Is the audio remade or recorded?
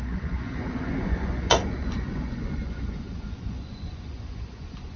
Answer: remade